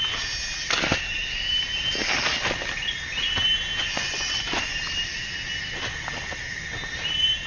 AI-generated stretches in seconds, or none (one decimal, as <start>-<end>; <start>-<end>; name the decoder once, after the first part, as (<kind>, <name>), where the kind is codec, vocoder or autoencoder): 3.8-4.6 (vocoder, Vocos)